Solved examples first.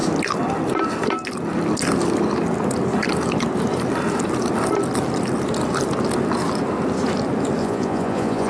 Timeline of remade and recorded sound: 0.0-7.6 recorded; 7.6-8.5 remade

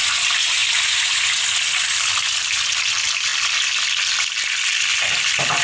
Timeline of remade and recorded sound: 0.0-5.6 recorded

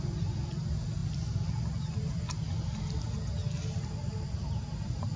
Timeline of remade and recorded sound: 0.0-5.2 recorded

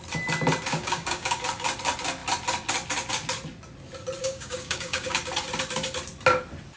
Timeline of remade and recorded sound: 0.0-0.7 recorded; 0.7-1.4 remade; 1.4-4.2 recorded; 4.2-5.2 remade; 5.2-6.8 recorded

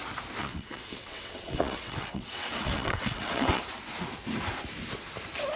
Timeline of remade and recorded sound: 0.0-0.4 recorded; 0.4-3.6 remade; 3.6-5.6 recorded

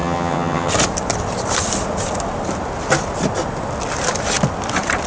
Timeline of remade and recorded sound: 0.0-0.7 remade; 0.7-5.1 recorded

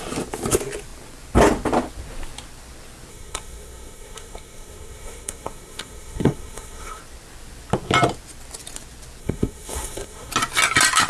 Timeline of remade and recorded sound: 0.0-3.1 recorded; 3.1-7.0 remade; 7.0-9.2 recorded; 9.2-10.3 remade; 10.3-11.1 recorded

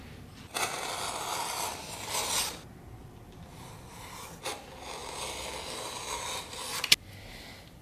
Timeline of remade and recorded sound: 0.0-7.8 recorded